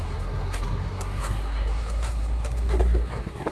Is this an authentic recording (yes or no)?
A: no